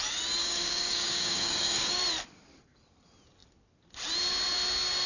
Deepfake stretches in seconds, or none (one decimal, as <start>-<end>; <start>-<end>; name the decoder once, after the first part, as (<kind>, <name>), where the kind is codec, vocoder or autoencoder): 0.4-2.0 (codec, DAC)